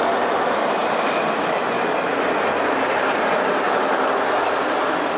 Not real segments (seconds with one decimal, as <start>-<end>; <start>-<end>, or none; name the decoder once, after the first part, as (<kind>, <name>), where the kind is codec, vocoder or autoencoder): none